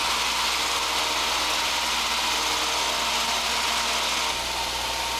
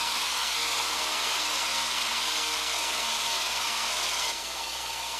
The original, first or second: first